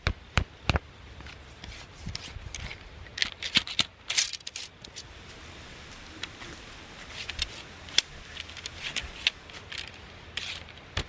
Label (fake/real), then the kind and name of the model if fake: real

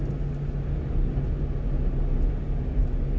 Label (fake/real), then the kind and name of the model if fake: real